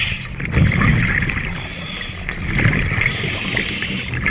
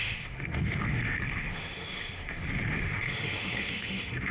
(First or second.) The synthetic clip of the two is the second